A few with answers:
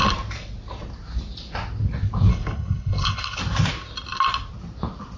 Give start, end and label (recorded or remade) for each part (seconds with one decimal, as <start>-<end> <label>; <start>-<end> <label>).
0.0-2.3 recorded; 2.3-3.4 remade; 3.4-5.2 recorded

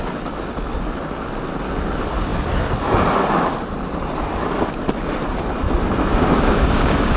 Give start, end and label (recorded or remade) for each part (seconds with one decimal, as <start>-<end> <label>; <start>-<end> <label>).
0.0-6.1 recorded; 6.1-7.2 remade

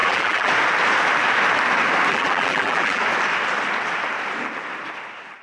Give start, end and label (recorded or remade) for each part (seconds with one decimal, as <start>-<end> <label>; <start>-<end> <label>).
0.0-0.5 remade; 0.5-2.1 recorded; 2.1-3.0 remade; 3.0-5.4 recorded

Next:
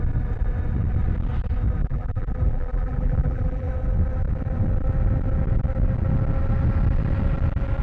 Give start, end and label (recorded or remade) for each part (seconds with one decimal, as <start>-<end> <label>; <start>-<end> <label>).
0.0-1.8 recorded; 1.8-3.7 remade; 3.7-7.8 recorded

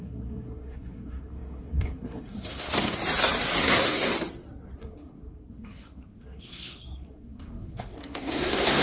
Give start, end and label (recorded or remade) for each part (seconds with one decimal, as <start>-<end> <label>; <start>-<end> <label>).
0.0-3.0 remade; 3.0-3.6 recorded; 3.6-4.1 remade; 4.1-4.8 recorded; 4.8-8.8 remade